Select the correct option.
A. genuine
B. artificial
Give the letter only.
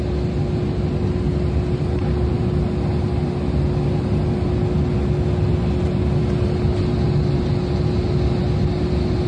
A